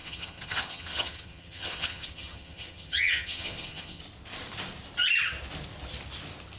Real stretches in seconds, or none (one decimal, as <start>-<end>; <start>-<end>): 4.0-6.6